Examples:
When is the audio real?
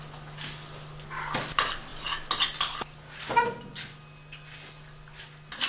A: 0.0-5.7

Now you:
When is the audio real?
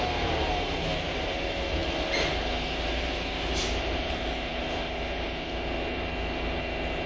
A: 1.8-3.0; 4.5-7.1